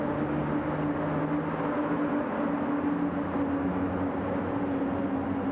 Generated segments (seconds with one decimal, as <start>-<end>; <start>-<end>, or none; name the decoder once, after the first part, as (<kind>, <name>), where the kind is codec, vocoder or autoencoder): none